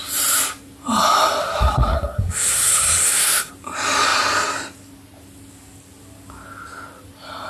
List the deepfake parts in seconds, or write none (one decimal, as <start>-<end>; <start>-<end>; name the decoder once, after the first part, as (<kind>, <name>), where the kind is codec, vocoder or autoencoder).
1.4-3.5 (codec, SNAC)